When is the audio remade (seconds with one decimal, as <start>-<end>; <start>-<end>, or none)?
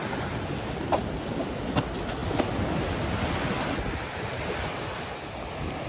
none